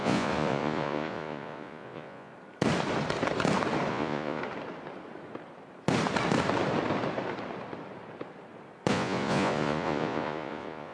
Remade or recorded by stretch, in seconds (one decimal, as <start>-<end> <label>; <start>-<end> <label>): 0.0-2.3 remade; 2.3-3.9 recorded; 3.9-4.4 remade; 4.4-8.9 recorded; 8.9-10.9 remade

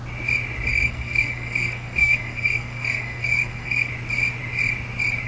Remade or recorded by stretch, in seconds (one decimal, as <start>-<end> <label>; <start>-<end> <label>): 0.0-0.7 recorded; 0.7-3.9 remade; 3.9-5.3 recorded

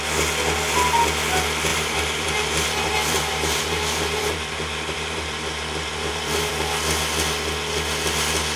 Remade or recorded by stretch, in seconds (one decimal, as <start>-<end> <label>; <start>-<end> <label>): 0.0-1.7 recorded; 1.7-6.5 remade; 6.5-8.6 recorded

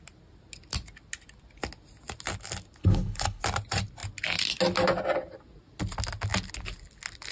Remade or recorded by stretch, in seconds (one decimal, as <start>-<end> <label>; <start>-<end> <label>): 0.0-2.8 recorded; 2.8-3.4 remade; 3.4-7.3 recorded

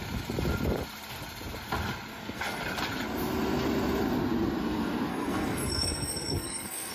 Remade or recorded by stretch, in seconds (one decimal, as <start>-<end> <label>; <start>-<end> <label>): 0.0-2.1 recorded; 2.1-2.6 remade; 2.6-5.1 recorded; 5.1-6.9 remade